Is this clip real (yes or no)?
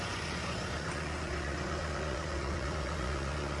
no